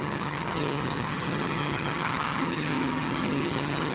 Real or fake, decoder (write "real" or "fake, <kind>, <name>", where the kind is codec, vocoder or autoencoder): fake, vocoder, HiFi-GAN